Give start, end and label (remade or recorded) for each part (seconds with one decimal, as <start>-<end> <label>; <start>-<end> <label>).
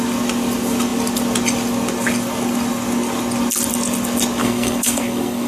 0.0-4.4 recorded; 4.4-5.5 remade